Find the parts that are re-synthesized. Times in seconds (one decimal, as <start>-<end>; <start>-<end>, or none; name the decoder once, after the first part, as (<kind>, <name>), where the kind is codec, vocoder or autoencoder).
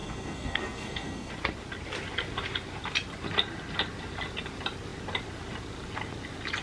0.0-1.3 (codec, SNAC)